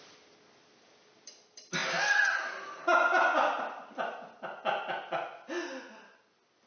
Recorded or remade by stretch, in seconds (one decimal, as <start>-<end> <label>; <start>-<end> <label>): 0.0-6.7 recorded